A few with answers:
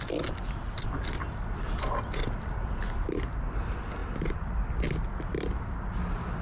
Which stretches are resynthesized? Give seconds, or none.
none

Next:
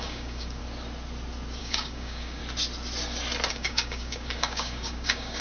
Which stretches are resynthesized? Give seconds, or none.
0.0-0.6 (codec, DAC); 1.6-2.4; 3.5-5.4

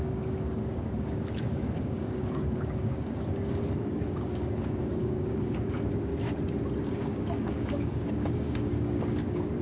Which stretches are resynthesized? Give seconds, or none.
0.0-6.1 (codec, DAC); 6.9-9.6

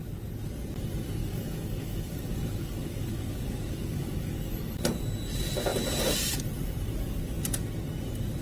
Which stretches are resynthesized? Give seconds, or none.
1.2-4.8 (codec, DAC)

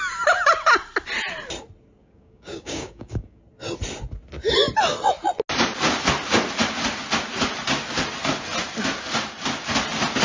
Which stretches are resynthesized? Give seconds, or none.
2.0-3.4 (codec, DAC)

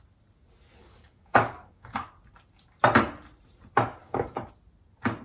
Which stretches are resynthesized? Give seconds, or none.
0.8-2.1 (codec, DAC); 4.0-4.5

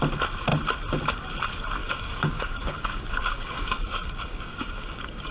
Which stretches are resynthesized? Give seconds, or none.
1.8-5.3 (codec, DAC)

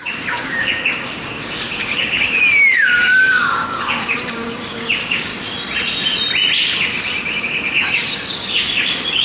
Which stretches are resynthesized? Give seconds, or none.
0.0-5.3 (codec, DAC); 7.4-9.2